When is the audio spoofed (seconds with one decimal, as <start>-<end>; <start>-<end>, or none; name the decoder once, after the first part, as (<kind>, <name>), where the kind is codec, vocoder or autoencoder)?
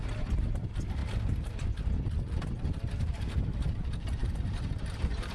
0.0-1.0 (vocoder, BigVGAN v2); 2.9-5.3